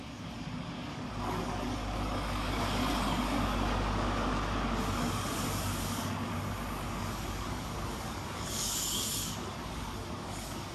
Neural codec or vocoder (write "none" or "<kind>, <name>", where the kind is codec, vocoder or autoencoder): codec, DAC